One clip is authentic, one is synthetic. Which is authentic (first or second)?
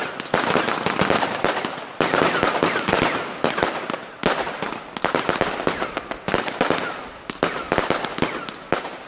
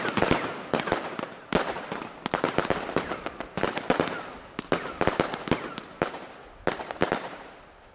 first